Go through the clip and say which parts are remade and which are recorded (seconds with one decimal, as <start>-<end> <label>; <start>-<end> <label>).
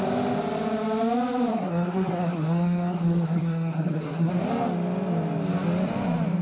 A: 0.0-1.5 recorded; 1.5-4.3 remade; 4.3-6.4 recorded